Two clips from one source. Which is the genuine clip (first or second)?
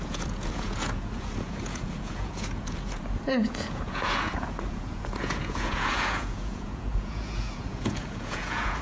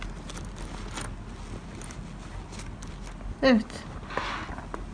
second